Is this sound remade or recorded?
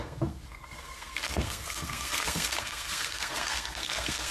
remade